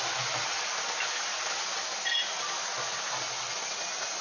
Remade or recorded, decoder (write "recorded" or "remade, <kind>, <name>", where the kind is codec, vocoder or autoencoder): recorded